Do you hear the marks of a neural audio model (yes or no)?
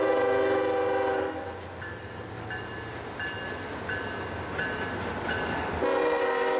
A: no